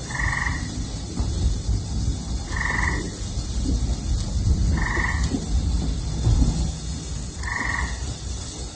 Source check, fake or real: real